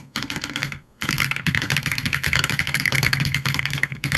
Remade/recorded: remade